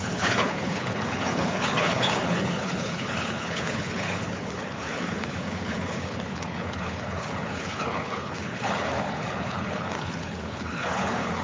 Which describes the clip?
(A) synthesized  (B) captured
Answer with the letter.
A